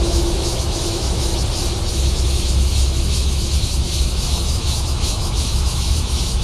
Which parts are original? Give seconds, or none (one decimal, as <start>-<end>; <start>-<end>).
1.3-1.9